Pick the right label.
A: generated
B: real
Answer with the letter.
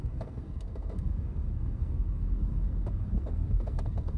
A